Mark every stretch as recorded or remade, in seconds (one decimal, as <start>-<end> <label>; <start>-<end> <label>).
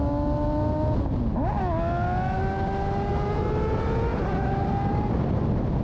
0.0-4.1 recorded; 4.1-5.3 remade; 5.3-5.8 recorded